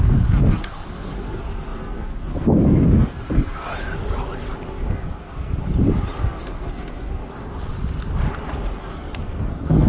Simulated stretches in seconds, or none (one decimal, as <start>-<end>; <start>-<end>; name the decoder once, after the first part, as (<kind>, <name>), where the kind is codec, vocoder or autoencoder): 0.0-3.7 (codec, SNAC); 4.9-5.6; 6.2-7.2; 8.8-9.9